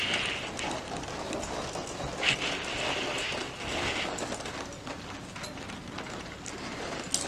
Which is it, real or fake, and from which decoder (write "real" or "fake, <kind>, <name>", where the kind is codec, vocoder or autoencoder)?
real